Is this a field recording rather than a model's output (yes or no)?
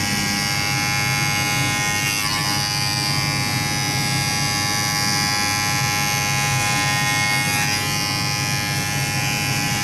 yes